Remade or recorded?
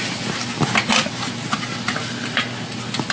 recorded